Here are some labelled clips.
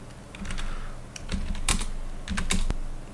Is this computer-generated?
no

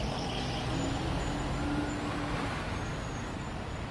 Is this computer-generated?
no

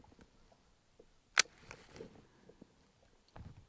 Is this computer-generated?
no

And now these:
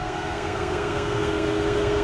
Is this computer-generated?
yes